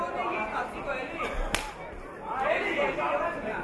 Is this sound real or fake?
real